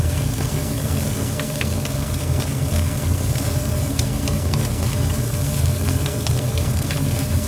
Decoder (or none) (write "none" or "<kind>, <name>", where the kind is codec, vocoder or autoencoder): codec, SNAC